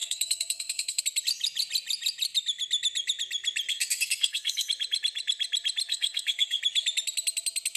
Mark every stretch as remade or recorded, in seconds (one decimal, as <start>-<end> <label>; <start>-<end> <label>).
0.0-1.0 remade; 1.0-3.7 recorded; 3.7-4.7 remade; 4.7-5.9 recorded; 5.9-6.6 remade; 6.6-7.8 recorded